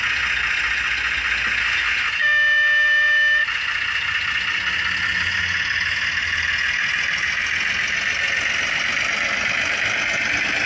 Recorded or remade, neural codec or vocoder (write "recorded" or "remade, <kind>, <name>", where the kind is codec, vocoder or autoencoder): recorded